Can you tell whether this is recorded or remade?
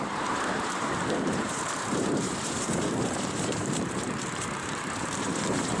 remade